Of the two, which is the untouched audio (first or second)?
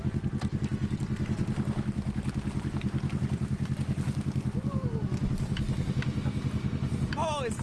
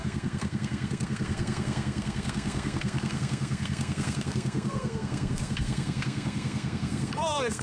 first